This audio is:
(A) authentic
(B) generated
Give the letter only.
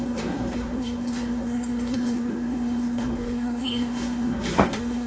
B